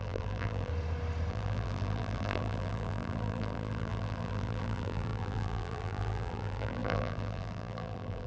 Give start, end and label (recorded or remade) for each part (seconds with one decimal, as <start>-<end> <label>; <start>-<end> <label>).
0.0-0.7 remade; 0.7-1.3 recorded; 1.3-8.3 remade